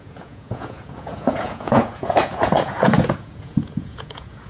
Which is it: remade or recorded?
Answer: remade